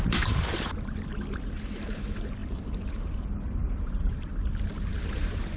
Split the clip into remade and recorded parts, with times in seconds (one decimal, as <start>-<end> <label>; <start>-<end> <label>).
0.0-4.3 remade; 4.3-4.9 recorded; 4.9-5.6 remade